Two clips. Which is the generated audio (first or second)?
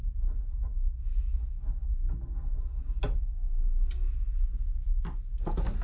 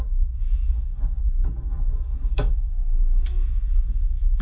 second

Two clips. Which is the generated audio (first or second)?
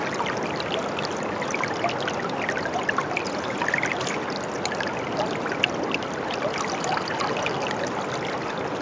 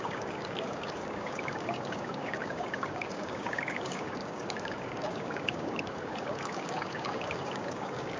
second